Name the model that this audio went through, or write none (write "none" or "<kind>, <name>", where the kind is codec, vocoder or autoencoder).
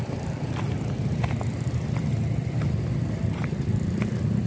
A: none